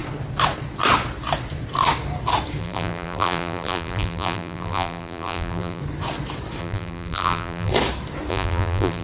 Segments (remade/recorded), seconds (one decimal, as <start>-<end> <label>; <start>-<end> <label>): 0.0-2.6 recorded; 2.6-5.8 remade; 5.8-6.6 recorded; 6.6-7.7 remade; 7.7-8.3 recorded; 8.3-9.0 remade